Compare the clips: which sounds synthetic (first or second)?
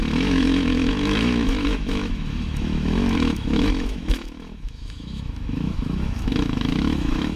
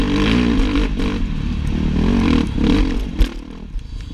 first